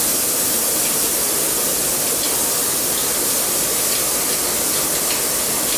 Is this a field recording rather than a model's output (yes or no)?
yes